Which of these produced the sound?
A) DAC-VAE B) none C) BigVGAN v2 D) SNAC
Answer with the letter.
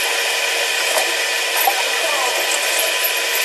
B